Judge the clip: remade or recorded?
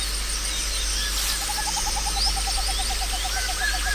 recorded